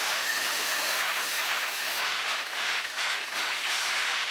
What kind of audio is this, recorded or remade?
remade